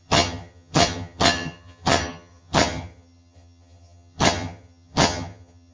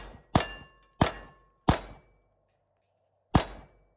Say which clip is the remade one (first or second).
first